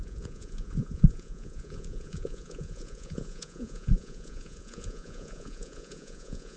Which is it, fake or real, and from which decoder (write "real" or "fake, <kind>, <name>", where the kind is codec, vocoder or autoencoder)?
fake, vocoder, Vocos